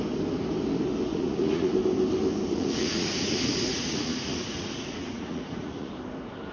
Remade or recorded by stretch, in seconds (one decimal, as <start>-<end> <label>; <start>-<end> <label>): 0.0-1.1 recorded; 1.1-1.7 remade; 1.7-2.5 recorded; 2.5-5.9 remade; 5.9-6.5 recorded